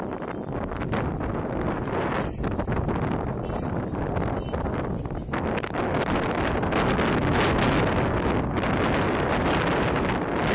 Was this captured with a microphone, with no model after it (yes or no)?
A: yes